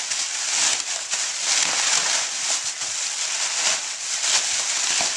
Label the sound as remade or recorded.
recorded